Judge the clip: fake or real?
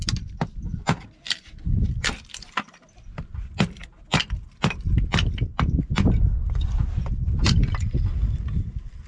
real